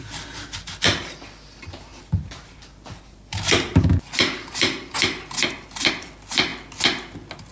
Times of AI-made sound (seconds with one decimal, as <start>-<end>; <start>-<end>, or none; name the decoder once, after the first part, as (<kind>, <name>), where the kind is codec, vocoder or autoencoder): 0.0-6.5 (vocoder, BigVGAN v2)